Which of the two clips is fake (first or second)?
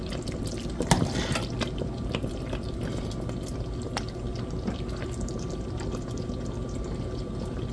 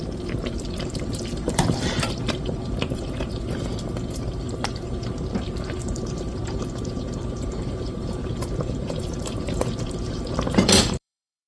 second